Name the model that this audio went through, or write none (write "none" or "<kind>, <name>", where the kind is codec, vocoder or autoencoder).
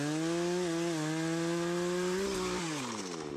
none